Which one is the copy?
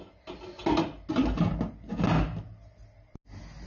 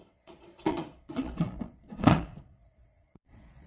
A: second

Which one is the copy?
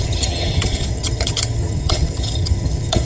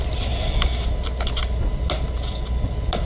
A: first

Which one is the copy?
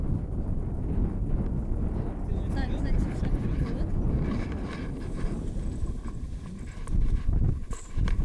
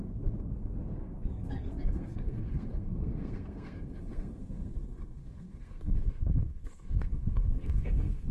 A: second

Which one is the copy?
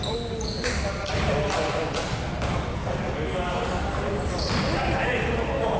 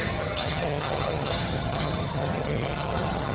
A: second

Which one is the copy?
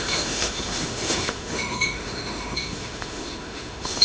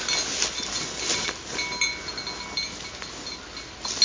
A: first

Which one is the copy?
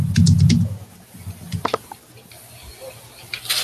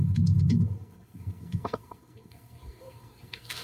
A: second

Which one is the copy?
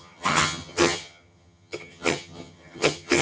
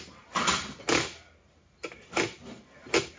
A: first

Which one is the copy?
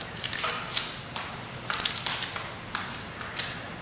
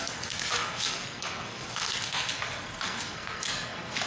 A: second